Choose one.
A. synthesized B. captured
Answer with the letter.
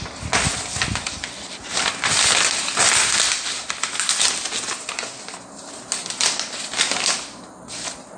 B